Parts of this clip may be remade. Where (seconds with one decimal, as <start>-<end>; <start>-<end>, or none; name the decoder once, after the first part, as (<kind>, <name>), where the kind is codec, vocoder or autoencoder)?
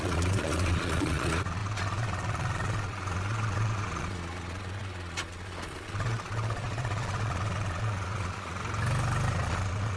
0.0-8.6 (vocoder, Vocos); 9.3-10.0